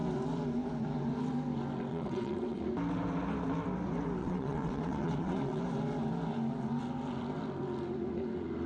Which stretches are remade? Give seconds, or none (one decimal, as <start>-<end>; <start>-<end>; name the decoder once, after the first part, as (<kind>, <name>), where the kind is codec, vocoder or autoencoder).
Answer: 1.9-2.6 (vocoder, WaveNeXt); 4.2-5.6